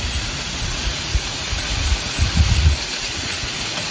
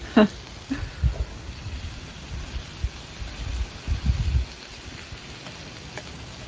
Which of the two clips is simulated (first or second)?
first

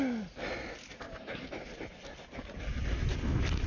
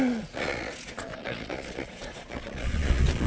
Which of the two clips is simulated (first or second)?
second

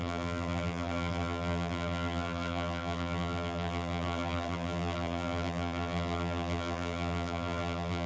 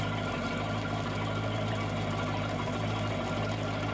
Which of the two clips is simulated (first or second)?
first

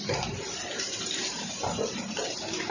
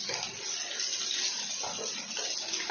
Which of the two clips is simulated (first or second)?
first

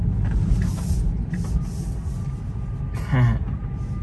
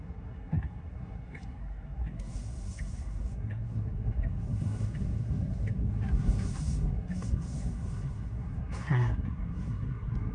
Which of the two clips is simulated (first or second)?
second